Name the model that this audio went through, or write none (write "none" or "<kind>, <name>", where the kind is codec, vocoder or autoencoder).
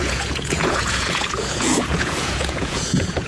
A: vocoder, Vocos